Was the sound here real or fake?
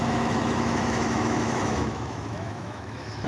fake